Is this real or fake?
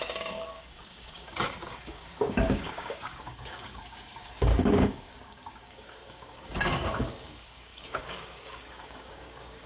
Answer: fake